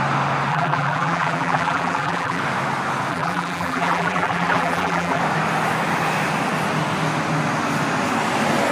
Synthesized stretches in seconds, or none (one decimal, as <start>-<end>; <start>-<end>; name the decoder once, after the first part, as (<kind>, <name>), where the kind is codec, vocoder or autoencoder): 0.5-2.4 (vocoder, BigVGAN v2); 3.1-5.2